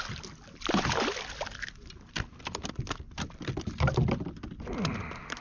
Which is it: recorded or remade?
recorded